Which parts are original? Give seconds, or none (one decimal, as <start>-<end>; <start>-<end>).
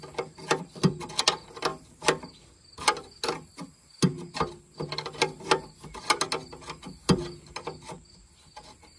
0.0-9.0